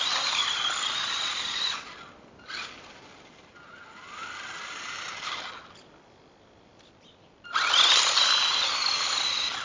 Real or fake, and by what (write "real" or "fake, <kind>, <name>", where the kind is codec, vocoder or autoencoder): real